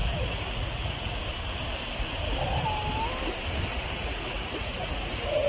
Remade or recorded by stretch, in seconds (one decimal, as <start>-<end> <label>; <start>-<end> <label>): 0.0-1.2 remade; 1.2-3.7 recorded; 3.7-5.5 remade